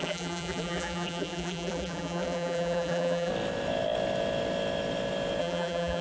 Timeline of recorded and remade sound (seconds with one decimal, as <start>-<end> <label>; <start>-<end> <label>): 0.0-3.3 remade; 3.3-5.4 recorded; 5.4-6.0 remade